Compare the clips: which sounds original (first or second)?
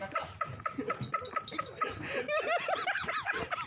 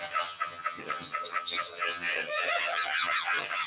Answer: first